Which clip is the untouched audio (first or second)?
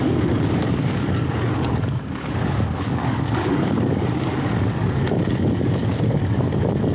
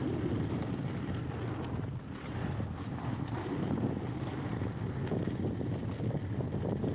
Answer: second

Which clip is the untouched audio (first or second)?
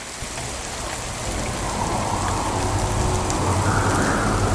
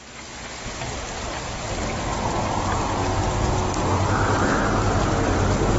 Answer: first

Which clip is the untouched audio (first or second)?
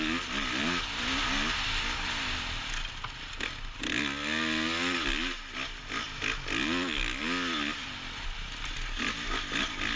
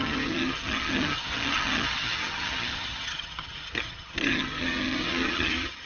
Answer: first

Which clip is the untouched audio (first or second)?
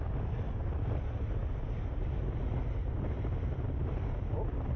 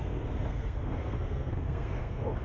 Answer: first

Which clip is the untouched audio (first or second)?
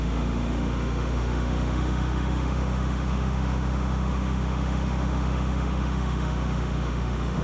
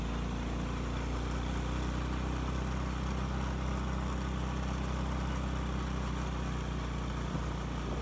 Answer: second